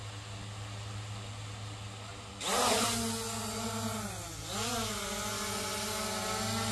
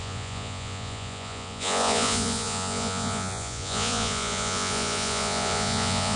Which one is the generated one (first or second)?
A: second